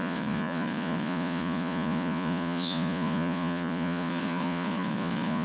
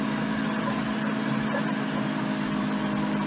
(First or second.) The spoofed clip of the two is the first